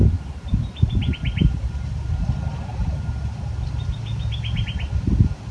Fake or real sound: real